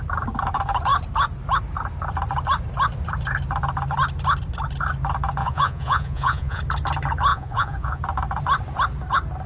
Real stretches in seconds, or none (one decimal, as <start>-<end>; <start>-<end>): 0.0-5.4; 6.6-7.3; 8.0-9.5